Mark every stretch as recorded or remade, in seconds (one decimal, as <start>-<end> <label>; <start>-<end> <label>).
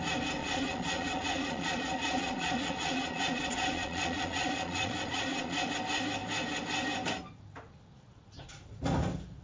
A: 0.0-0.4 recorded; 0.4-5.7 remade; 5.7-9.4 recorded